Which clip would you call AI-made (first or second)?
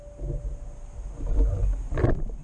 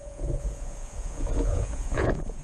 second